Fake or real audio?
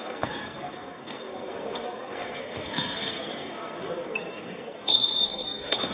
fake